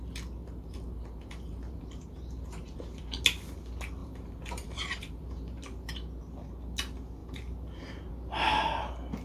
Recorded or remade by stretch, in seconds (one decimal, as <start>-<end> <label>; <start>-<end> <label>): 0.0-0.4 recorded; 0.4-3.2 remade; 3.2-4.0 recorded; 4.0-5.9 remade; 5.9-7.2 recorded; 7.2-8.1 remade; 8.1-9.2 recorded